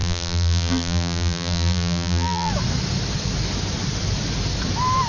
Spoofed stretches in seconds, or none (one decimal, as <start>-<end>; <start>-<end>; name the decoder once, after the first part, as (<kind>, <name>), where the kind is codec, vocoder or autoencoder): 0.0-2.5 (vocoder, BigVGAN v2)